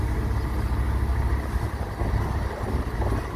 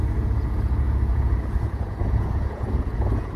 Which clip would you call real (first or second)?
first